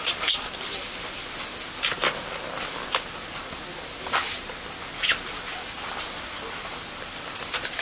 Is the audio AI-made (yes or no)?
no